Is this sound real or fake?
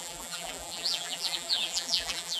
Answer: fake